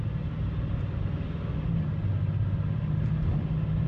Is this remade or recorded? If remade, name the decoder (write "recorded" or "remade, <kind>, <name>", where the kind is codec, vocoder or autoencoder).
recorded